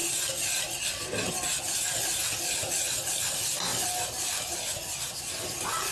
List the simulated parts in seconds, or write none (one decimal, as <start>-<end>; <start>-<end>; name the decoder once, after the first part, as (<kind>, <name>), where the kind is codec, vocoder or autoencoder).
none